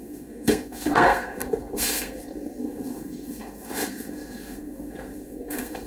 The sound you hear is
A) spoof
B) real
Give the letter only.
A